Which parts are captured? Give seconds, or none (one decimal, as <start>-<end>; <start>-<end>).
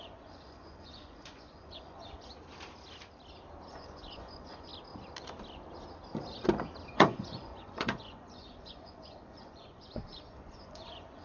2.3-3.7; 4.7-6.9